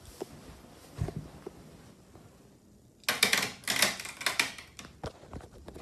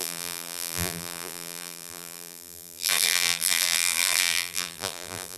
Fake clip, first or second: second